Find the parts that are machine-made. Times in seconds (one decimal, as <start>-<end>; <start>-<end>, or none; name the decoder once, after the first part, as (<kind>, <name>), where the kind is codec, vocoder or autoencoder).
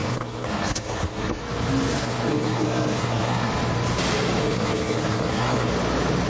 0.0-1.4 (codec, SNAC); 2.0-3.5; 4.4-5.7